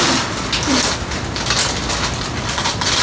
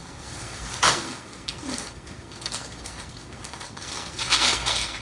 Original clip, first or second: first